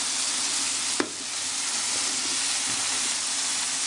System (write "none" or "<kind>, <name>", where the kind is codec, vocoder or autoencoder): none